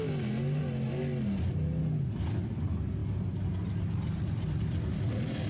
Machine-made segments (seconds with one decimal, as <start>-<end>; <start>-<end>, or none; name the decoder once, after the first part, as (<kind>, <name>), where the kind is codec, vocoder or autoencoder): none